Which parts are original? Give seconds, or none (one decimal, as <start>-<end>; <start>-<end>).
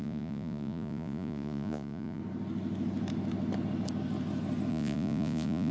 2.2-4.7